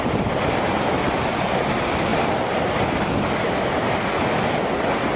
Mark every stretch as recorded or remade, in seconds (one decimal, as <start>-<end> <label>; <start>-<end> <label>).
0.0-5.2 recorded